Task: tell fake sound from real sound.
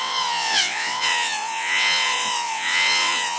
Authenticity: fake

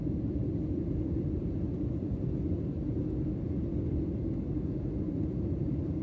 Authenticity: real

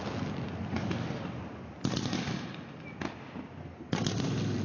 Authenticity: real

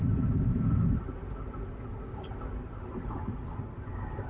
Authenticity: real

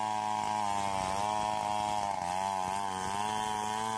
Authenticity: real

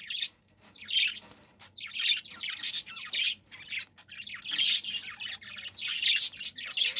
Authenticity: real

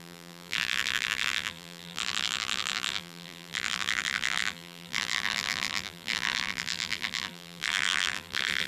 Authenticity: fake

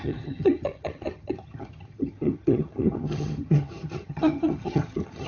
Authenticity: fake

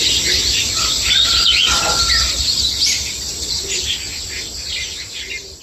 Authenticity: real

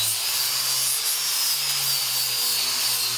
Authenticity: real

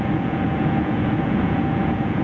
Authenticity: fake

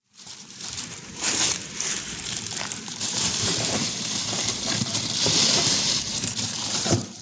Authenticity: fake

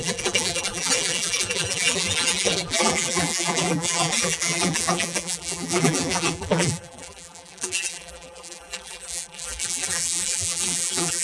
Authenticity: fake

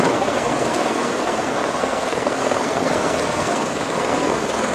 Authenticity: fake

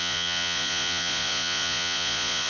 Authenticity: fake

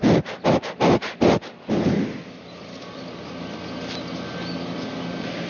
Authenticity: real